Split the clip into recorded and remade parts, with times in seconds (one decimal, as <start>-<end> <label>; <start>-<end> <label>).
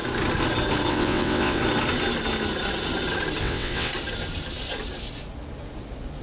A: 0.0-0.9 recorded; 0.9-1.6 remade; 1.6-3.4 recorded; 3.4-3.9 remade; 3.9-6.2 recorded